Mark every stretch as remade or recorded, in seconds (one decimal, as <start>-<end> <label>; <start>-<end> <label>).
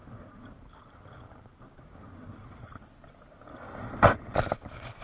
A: 0.0-5.0 recorded